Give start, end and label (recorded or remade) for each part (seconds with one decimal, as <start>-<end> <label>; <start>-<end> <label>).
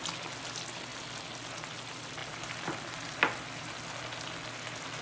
0.0-5.0 recorded